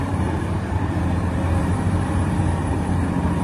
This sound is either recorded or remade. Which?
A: remade